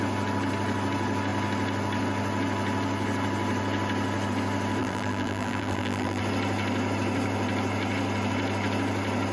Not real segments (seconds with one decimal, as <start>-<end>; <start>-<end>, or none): 4.8-6.2